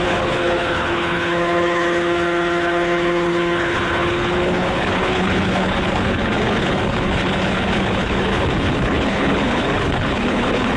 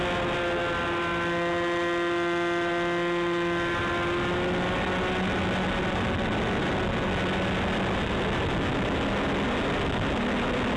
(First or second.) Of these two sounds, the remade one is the first